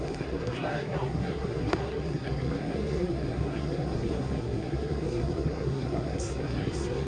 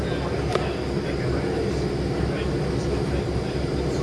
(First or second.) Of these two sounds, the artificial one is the first